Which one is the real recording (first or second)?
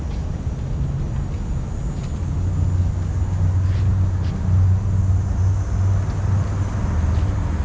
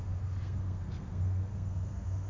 first